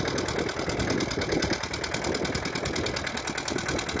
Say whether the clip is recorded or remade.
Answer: recorded